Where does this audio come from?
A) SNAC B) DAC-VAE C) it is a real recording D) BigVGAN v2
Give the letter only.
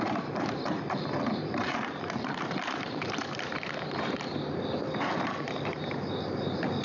D